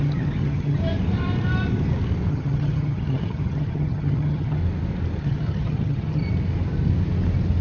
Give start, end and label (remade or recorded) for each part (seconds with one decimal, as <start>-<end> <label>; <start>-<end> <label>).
0.0-0.8 remade; 0.8-2.3 recorded; 2.3-4.6 remade; 4.6-5.2 recorded; 5.2-6.2 remade; 6.2-7.6 recorded